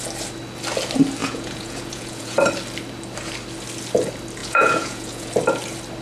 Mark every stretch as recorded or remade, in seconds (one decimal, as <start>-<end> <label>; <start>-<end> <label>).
0.0-1.2 recorded; 1.2-2.4 remade; 2.4-4.4 recorded; 4.4-5.3 remade; 5.3-6.0 recorded